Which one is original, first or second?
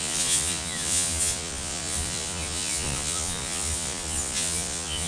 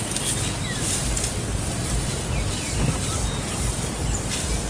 second